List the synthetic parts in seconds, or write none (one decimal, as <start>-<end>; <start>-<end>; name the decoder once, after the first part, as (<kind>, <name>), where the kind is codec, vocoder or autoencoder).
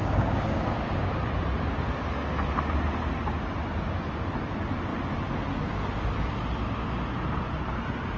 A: 0.0-1.1 (codec, DAC)